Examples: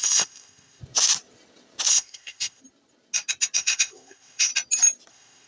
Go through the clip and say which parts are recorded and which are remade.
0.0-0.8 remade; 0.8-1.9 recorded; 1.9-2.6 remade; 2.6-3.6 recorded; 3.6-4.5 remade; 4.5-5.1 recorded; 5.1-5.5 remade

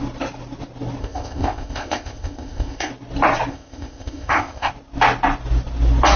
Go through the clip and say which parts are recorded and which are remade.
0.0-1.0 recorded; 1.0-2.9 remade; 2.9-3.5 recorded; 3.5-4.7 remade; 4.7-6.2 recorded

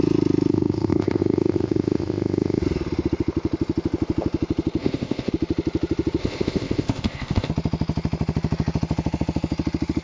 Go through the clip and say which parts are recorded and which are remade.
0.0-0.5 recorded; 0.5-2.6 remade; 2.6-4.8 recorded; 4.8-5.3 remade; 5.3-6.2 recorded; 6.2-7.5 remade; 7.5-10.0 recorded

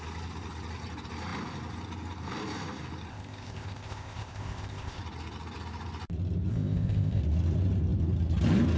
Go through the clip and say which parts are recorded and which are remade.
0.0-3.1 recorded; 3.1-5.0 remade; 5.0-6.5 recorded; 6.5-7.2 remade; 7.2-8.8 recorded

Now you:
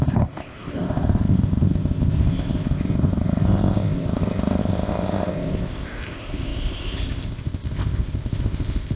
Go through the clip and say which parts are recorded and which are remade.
0.0-9.0 remade

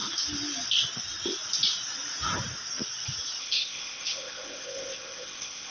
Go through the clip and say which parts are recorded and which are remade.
0.0-3.4 recorded; 3.4-5.7 remade